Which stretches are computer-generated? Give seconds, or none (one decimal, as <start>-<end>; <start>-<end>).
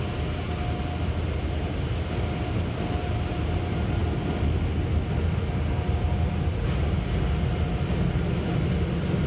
none